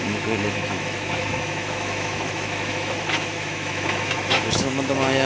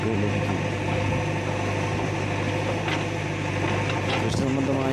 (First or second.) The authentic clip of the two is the second